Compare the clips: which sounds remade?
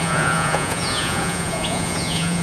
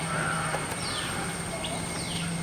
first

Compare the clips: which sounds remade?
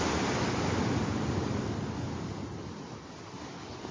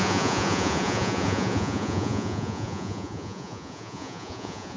second